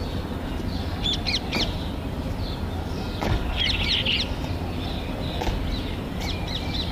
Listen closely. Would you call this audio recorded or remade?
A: recorded